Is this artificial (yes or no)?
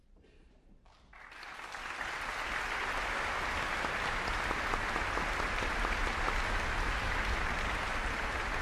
yes